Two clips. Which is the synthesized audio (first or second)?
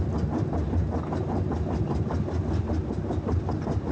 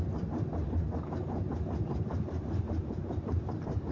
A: second